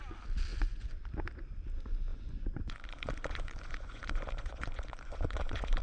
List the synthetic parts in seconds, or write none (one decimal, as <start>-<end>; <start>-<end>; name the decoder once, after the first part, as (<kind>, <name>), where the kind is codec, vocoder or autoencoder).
0.5-1.1 (vocoder, Vocos); 2.1-5.8